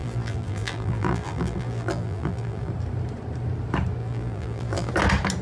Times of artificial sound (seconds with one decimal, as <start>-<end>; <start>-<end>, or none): 0.0-2.7; 4.0-4.9